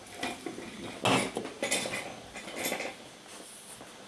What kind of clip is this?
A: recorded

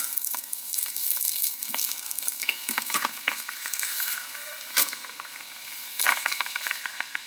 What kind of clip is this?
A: remade